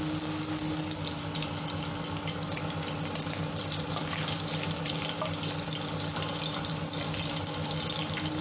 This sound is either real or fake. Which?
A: real